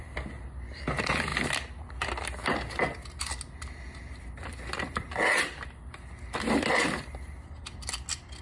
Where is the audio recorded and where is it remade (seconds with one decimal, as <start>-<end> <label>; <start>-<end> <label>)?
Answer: 0.0-8.4 recorded